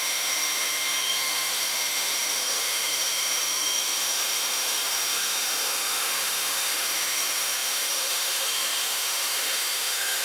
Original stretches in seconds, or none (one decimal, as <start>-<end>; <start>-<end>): none